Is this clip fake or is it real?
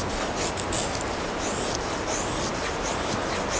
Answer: real